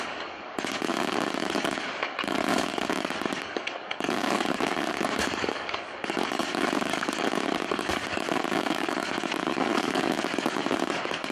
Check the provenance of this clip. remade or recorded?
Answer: remade